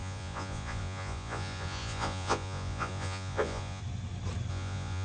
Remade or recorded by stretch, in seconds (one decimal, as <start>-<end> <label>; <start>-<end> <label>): 0.0-3.8 remade; 3.8-4.5 recorded; 4.5-5.0 remade